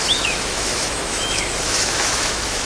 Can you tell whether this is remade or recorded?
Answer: remade